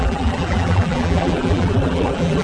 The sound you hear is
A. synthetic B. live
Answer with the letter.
A